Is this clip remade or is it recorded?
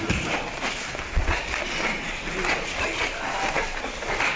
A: recorded